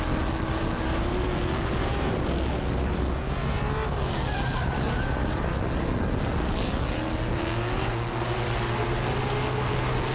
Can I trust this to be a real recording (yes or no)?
yes